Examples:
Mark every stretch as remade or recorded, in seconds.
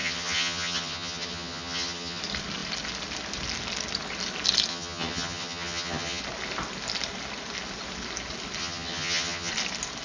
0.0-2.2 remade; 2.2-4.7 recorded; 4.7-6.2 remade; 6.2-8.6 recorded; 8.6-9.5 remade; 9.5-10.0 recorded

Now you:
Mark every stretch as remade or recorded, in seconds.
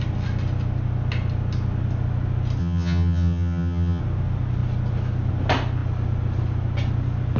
0.0-2.6 recorded; 2.6-4.0 remade; 4.0-7.4 recorded